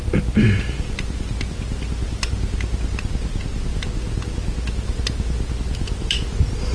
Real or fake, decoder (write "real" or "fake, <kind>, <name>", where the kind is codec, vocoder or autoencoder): real